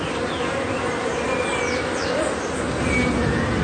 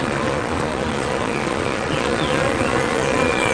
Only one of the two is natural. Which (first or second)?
first